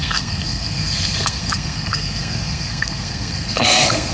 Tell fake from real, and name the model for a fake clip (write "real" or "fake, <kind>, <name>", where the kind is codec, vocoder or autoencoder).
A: fake, codec, SNAC